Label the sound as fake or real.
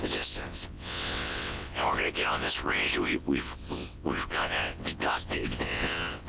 fake